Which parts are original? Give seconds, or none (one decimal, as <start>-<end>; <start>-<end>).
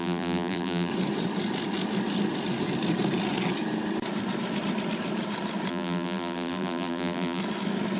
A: 0.9-5.7; 7.4-8.0